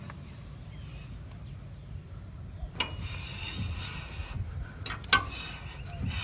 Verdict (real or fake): real